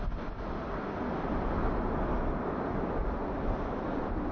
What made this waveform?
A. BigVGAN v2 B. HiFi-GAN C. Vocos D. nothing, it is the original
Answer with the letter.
D